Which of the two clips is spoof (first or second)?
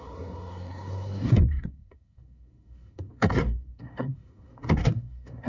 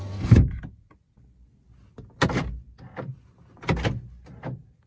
first